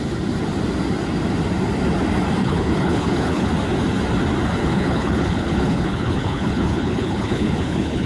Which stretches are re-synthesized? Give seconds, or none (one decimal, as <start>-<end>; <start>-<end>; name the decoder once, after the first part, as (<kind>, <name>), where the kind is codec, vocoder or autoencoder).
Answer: 2.4-3.5 (codec, HILCodec); 4.6-8.1

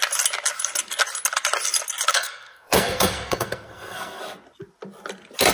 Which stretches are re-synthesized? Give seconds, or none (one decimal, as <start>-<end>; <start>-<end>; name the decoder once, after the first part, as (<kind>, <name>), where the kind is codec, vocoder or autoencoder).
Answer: 2.1-4.2 (codec, SNAC)

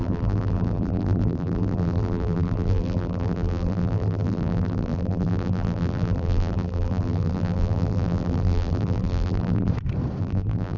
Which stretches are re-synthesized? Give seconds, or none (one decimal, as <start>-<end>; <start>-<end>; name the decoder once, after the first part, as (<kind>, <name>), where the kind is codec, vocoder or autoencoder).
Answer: 0.0-9.7 (vocoder, BigVGAN v2); 10.2-10.8

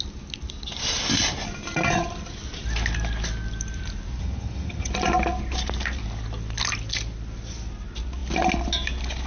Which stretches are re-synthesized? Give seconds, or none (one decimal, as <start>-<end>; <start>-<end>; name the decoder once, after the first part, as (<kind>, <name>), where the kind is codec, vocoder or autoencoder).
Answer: 4.2-4.9 (vocoder, HiFi-GAN)

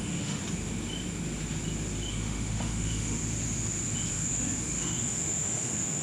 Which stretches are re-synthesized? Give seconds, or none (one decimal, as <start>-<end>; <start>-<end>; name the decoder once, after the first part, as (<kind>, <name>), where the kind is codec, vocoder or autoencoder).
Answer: 0.0-0.4 (autoencoder, DAC-VAE); 2.1-3.2; 4.1-6.0

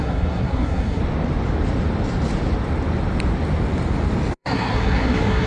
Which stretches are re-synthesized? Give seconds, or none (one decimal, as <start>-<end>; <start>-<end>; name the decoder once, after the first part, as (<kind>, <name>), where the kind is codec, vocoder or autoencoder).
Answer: 0.0-1.0 (codec, SNAC); 4.3-5.5

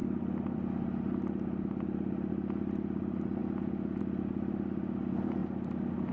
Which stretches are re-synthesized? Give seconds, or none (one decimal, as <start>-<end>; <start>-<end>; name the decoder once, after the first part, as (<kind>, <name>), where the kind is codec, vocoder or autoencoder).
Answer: none

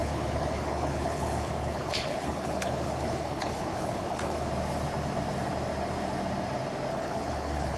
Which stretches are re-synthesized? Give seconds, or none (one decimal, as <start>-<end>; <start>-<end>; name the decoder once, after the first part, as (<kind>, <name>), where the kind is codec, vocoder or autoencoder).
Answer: 0.0-4.5 (codec, HILCodec); 6.9-7.8